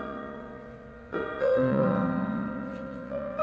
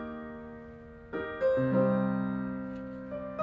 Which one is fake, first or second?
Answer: first